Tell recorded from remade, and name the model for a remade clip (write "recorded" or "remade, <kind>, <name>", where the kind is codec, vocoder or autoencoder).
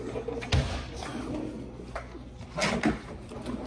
recorded